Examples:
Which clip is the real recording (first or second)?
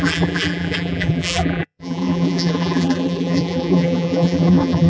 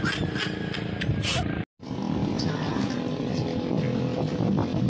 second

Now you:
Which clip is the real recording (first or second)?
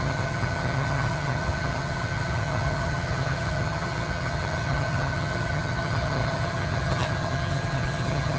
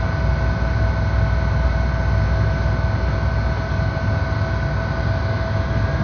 second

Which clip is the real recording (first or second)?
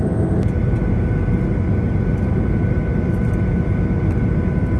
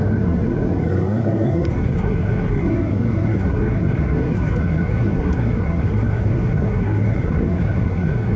first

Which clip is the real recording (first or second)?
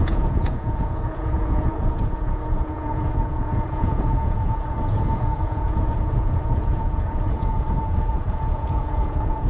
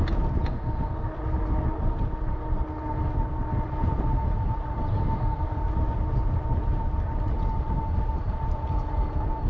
second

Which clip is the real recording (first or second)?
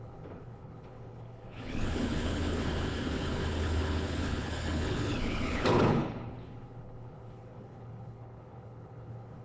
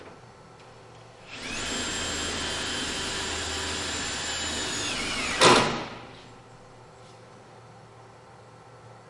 second